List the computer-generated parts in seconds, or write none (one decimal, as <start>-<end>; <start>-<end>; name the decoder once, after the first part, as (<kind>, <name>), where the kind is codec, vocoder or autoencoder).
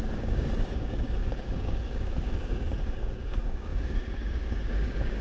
0.0-5.2 (codec, DAC)